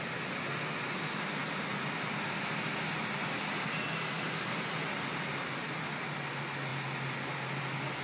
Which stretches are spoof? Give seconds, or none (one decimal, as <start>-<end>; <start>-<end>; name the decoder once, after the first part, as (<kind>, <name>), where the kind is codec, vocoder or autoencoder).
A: none